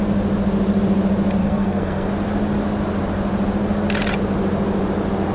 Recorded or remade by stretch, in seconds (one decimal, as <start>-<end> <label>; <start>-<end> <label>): 0.0-1.4 recorded; 1.4-2.1 remade; 2.1-5.3 recorded